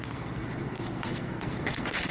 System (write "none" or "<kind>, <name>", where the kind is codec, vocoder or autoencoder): codec, SNAC